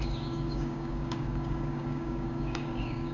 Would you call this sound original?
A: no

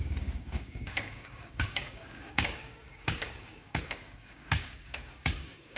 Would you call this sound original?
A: no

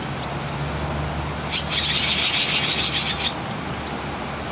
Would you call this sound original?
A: yes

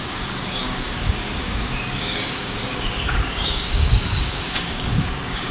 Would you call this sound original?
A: no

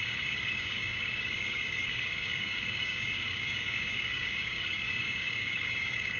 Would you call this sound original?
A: no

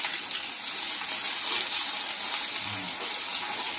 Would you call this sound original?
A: yes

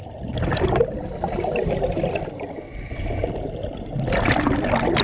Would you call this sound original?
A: yes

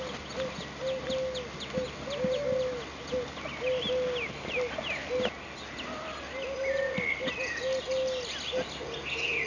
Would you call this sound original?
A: yes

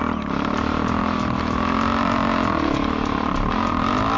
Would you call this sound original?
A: yes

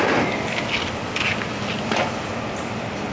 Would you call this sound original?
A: yes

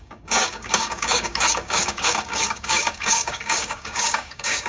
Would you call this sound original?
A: no